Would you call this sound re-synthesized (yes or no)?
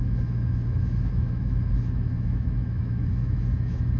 yes